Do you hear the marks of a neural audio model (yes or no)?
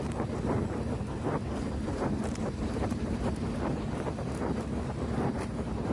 yes